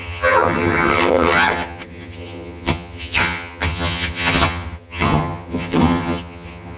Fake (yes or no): yes